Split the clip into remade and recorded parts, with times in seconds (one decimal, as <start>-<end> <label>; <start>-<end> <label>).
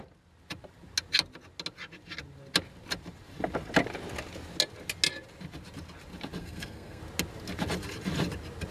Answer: 0.0-6.4 recorded; 6.4-7.0 remade; 7.0-8.7 recorded